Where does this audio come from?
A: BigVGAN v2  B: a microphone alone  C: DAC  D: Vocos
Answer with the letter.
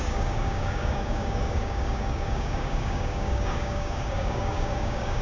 C